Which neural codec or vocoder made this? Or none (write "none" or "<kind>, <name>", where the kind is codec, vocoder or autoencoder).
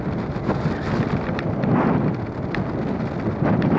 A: none